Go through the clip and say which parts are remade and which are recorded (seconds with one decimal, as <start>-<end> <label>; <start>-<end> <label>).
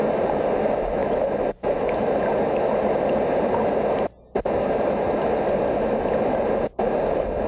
0.0-7.5 recorded